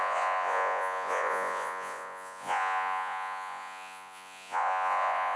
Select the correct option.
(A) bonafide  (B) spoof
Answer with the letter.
B